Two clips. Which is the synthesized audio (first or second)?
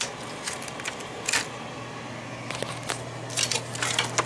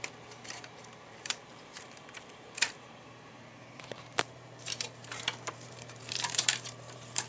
second